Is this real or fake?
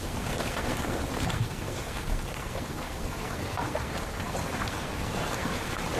fake